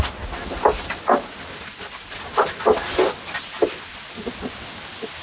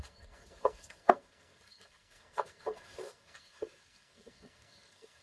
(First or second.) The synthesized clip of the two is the second